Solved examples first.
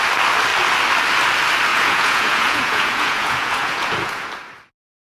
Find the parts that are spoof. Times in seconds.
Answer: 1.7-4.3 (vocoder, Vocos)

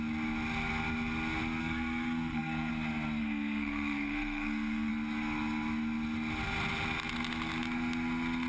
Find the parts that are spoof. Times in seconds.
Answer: 1.6-2.7 (codec, SNAC); 3.2-4.9